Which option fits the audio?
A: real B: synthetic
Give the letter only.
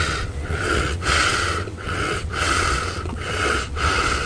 B